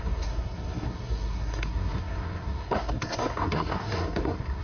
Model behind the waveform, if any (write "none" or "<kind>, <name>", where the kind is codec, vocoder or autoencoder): codec, SNAC